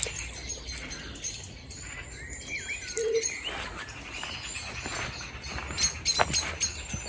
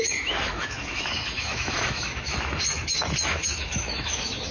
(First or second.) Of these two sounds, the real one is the first